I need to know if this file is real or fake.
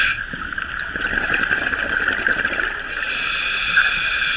real